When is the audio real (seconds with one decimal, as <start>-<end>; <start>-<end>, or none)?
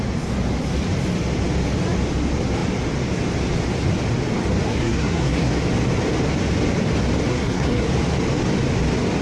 0.0-4.7; 5.5-7.3; 7.9-9.2